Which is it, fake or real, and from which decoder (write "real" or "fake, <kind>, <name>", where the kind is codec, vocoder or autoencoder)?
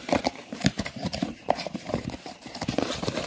fake, vocoder, BigVGAN v2